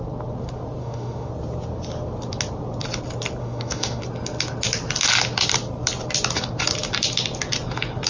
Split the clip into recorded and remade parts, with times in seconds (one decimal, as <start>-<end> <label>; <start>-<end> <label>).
0.0-0.8 recorded; 0.8-1.3 remade; 1.3-3.4 recorded; 3.4-4.0 remade; 4.0-8.1 recorded